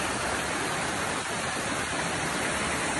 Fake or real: real